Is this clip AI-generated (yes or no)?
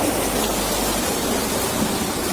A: no